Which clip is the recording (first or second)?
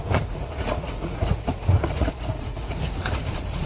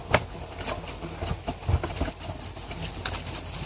second